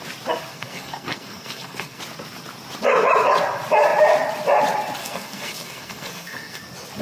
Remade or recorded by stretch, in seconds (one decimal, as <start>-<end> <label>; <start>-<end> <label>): 0.0-0.5 recorded; 0.5-2.0 remade; 2.0-5.0 recorded; 5.0-6.6 remade; 6.6-7.0 recorded